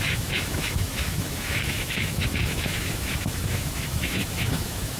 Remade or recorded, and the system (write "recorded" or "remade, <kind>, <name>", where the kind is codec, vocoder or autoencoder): remade, autoencoder, DAC-VAE